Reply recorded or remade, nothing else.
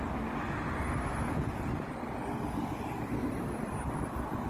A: recorded